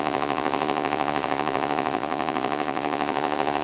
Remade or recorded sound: remade